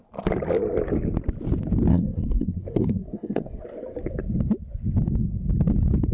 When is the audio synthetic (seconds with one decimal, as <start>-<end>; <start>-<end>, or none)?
1.9-3.6